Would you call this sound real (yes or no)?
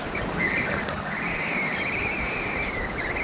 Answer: yes